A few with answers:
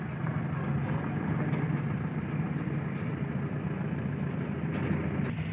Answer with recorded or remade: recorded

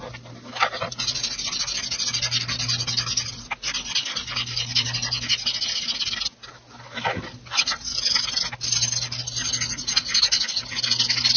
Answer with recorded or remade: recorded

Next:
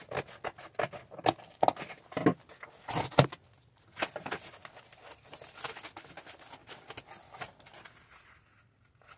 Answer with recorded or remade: recorded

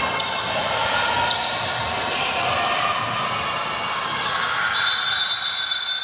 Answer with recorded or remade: recorded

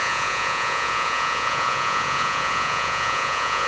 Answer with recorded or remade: remade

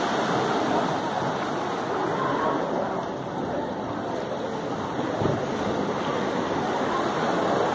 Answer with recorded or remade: recorded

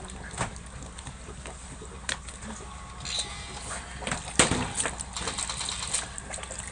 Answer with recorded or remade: recorded